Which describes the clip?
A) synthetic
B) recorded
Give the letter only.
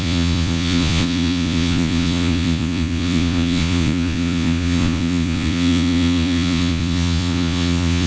A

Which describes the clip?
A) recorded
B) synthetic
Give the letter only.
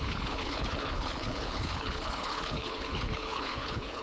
B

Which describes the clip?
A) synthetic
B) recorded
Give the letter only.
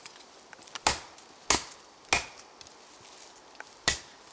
B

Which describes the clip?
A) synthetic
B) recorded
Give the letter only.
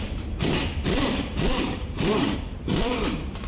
A